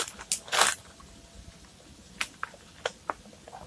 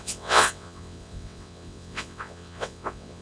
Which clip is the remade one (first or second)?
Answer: second